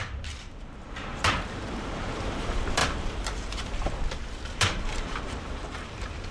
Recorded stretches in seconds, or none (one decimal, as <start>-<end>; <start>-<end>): none